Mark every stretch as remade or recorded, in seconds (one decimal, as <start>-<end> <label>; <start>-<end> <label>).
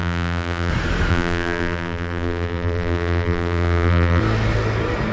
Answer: 0.0-0.7 remade; 0.7-1.1 recorded; 1.1-4.2 remade; 4.2-5.1 recorded